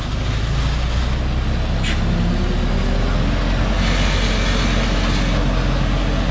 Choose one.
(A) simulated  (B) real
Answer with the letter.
B